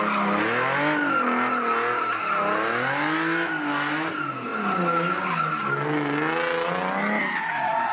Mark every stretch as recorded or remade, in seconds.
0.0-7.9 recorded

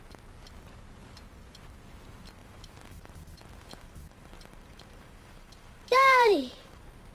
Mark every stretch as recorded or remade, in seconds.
0.0-2.4 recorded; 2.4-7.1 remade

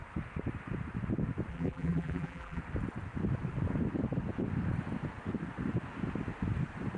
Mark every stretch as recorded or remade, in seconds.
0.0-1.5 recorded; 1.5-2.6 remade; 2.6-7.0 recorded